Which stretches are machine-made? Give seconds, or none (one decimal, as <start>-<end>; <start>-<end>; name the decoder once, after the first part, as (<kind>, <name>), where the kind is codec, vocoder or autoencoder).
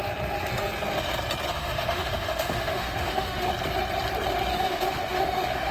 1.5-3.5 (autoencoder, DAC-VAE); 4.5-5.7